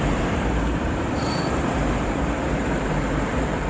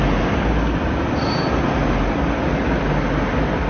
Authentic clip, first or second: second